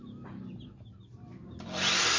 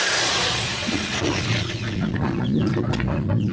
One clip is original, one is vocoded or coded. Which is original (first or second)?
first